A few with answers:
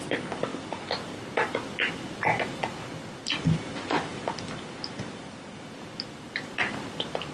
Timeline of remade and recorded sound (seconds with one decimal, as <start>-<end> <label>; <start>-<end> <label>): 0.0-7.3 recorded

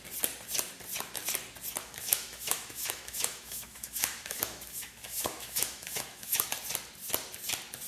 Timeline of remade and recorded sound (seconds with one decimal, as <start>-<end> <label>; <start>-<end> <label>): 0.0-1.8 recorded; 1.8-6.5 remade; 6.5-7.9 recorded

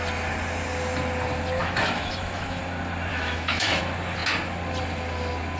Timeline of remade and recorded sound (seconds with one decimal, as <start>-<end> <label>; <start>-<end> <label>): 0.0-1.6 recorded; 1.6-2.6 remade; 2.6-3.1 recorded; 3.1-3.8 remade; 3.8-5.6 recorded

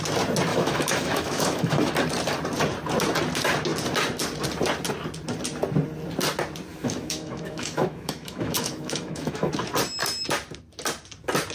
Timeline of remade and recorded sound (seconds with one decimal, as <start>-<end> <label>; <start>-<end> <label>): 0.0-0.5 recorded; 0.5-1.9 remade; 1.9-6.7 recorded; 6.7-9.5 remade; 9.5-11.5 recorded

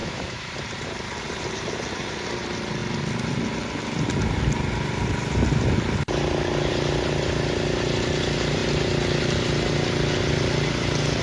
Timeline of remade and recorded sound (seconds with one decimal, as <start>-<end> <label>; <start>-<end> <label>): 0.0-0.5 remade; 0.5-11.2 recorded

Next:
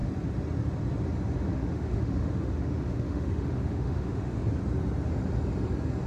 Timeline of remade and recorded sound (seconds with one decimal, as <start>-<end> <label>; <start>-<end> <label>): 0.0-1.5 recorded; 1.5-4.4 remade; 4.4-6.1 recorded

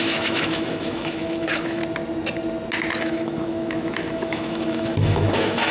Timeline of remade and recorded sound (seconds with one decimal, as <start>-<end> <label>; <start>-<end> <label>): 0.0-1.8 remade; 1.8-3.0 recorded; 3.0-5.7 remade

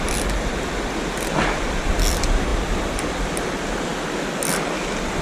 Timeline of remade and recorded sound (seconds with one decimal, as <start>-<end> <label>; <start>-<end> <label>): 0.0-5.2 recorded